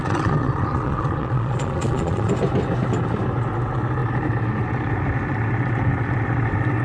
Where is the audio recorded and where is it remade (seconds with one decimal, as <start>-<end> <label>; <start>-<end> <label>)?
0.0-2.3 remade; 2.3-6.8 recorded